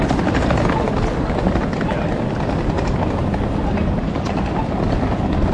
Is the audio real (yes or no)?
yes